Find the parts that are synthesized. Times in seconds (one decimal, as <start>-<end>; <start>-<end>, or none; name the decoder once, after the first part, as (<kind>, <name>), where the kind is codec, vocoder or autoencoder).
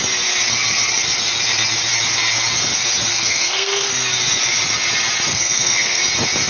3.1-3.9 (codec, SNAC); 5.3-6.0